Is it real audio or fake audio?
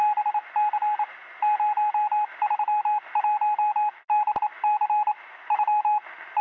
real